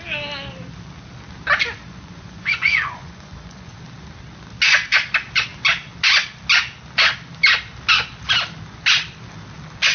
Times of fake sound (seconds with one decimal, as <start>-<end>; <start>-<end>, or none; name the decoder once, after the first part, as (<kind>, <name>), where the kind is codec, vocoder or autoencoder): 1.8-3.8 (vocoder, Vocos)